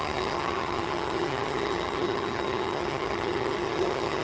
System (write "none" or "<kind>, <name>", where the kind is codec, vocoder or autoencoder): vocoder, HiFi-GAN